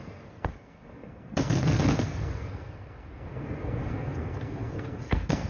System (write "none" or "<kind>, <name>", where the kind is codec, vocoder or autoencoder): codec, SNAC